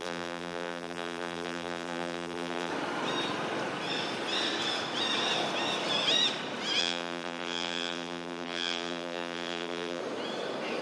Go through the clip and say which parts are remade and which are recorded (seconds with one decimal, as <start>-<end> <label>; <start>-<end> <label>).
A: 0.0-2.7 remade; 2.7-6.8 recorded; 6.8-10.0 remade; 10.0-10.8 recorded